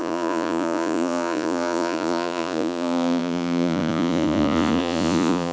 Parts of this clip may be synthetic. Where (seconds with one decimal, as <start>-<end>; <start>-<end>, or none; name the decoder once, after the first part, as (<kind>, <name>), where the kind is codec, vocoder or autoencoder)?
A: 0.0-5.5 (vocoder, Vocos)